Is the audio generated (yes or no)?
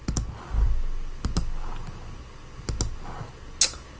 no